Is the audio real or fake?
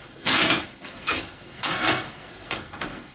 fake